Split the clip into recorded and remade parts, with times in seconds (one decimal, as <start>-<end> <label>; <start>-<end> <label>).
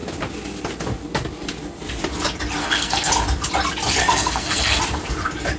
0.0-2.6 recorded; 2.6-3.1 remade; 3.1-4.0 recorded; 4.0-4.8 remade; 4.8-5.6 recorded